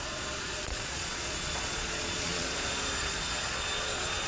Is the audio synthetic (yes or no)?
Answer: yes